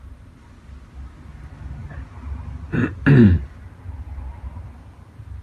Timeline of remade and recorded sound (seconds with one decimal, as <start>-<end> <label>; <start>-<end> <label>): 0.0-5.4 recorded